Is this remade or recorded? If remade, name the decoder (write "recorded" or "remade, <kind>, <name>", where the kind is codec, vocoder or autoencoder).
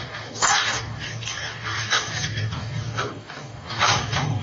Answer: remade, codec, DAC